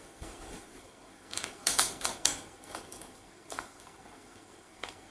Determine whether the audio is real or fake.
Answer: fake